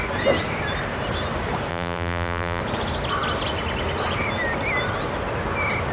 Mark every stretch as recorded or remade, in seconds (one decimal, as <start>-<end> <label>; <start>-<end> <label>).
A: 0.0-1.7 recorded; 1.7-2.6 remade; 2.6-5.9 recorded